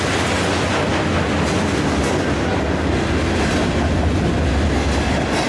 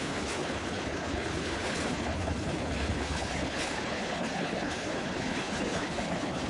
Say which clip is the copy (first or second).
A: second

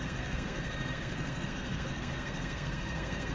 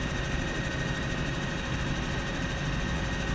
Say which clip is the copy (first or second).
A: first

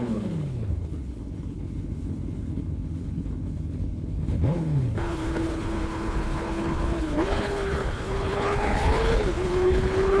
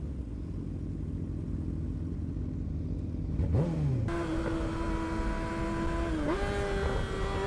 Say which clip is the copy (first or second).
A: first